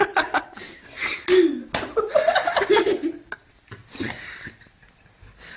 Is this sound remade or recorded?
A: recorded